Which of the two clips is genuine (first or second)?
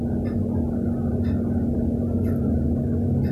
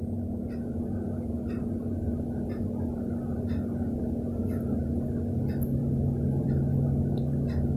first